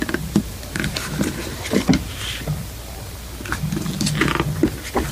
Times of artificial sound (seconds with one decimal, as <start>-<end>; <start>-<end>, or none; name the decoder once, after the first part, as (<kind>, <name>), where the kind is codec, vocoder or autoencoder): 0.0-1.9 (vocoder, BigVGAN v2)